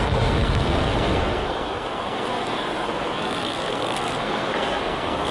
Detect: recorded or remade remade